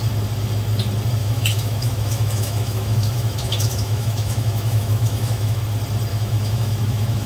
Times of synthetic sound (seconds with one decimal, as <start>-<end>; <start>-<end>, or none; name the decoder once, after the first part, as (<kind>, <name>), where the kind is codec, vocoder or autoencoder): 1.2-5.6 (autoencoder, DAC-VAE); 6.1-7.3